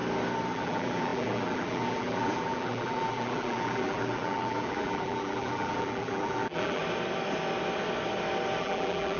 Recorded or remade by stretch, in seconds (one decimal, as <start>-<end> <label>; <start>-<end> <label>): 0.0-0.5 recorded; 0.5-6.8 remade; 6.8-8.6 recorded; 8.6-9.2 remade